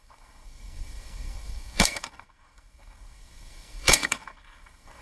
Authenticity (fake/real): fake